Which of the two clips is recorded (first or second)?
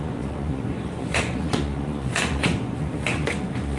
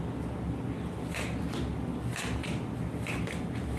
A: second